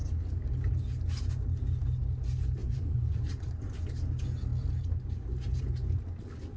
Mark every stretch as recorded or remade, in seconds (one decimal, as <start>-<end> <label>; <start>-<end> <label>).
0.0-2.6 recorded; 2.6-3.3 remade; 3.3-6.6 recorded